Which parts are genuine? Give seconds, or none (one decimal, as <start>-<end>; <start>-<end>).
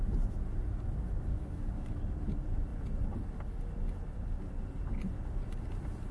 0.0-1.3; 1.9-6.1